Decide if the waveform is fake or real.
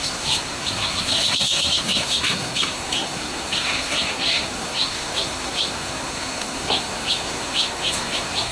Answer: fake